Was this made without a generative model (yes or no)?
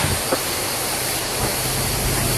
no